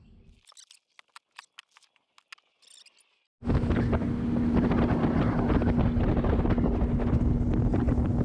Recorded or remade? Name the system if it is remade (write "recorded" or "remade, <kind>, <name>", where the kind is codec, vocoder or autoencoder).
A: recorded